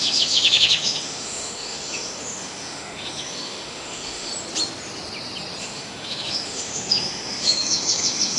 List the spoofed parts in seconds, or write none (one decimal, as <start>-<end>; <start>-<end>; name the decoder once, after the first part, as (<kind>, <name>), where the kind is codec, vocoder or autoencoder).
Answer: 0.0-4.3 (autoencoder, DAC-VAE); 5.6-8.4